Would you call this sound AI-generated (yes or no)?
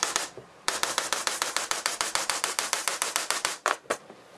yes